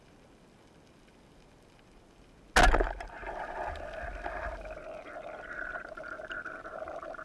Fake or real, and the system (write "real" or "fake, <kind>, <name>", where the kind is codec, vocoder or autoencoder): real